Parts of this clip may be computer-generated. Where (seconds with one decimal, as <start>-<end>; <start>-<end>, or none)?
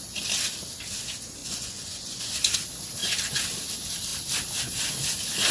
1.4-2.3